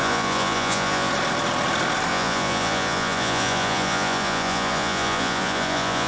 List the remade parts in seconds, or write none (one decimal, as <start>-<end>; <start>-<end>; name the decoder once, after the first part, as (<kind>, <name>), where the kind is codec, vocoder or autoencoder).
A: 0.0-1.1 (vocoder, Vocos); 2.1-6.1